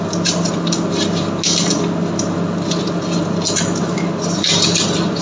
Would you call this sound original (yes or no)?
yes